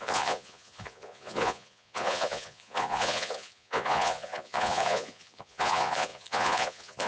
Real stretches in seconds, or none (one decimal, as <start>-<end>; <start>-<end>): none